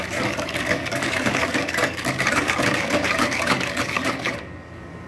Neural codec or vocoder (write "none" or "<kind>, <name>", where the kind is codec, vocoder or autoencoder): codec, DAC